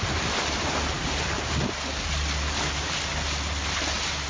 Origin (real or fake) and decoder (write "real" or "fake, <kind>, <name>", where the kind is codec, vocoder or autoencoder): real